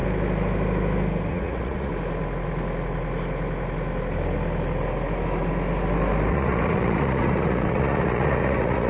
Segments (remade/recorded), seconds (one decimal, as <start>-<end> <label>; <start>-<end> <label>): 0.0-1.3 recorded; 1.3-1.9 remade; 1.9-6.3 recorded; 6.3-8.9 remade